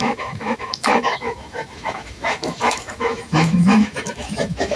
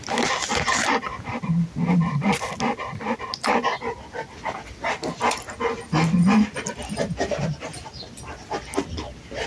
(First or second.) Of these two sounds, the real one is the second